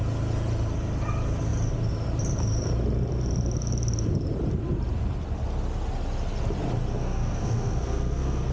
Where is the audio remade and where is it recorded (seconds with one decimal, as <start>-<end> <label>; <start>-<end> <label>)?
0.0-6.9 recorded; 6.9-8.5 remade